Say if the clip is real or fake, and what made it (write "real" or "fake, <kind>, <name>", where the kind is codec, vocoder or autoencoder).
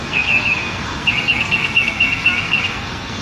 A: fake, codec, SNAC